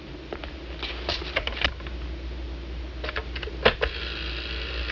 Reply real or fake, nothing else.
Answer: real